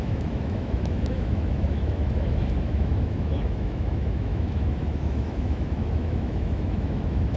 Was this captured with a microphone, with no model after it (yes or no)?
no